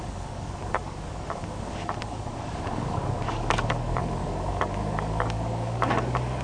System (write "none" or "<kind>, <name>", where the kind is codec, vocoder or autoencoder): codec, DAC